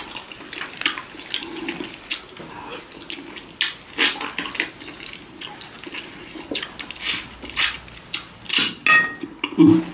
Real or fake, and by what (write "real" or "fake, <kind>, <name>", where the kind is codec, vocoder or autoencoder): real